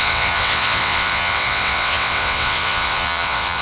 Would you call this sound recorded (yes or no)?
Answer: no